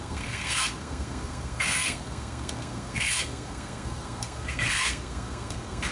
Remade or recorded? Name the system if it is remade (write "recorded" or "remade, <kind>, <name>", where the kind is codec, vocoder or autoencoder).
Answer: remade, codec, SNAC